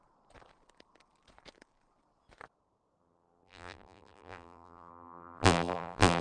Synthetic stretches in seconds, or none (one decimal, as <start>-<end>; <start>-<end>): 3.0-6.2